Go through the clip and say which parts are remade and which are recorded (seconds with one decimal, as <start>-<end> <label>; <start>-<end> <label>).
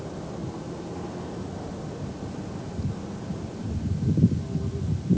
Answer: 0.0-5.2 recorded